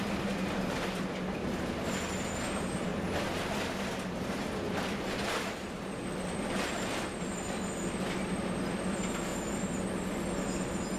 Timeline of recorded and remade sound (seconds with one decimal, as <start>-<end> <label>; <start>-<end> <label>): 0.0-11.0 recorded

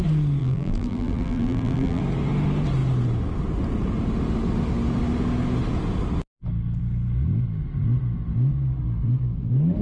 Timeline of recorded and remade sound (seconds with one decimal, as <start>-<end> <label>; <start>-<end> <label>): 0.0-0.4 recorded; 0.4-2.0 remade; 2.0-9.8 recorded